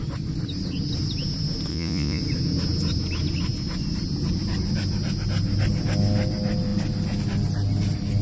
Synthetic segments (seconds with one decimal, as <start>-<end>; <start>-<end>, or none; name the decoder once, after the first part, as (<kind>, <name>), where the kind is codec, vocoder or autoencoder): 1.7-2.2 (vocoder, Vocos)